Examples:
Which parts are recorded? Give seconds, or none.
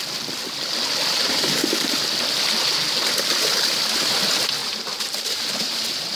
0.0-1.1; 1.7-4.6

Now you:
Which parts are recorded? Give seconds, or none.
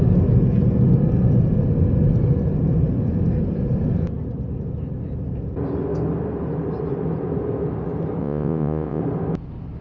0.0-8.2; 9.0-9.8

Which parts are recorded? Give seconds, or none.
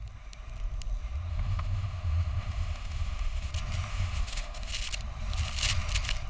0.0-1.3; 3.5-3.9; 4.7-6.3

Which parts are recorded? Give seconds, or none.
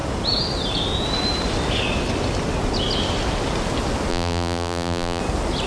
0.0-4.1; 5.2-5.7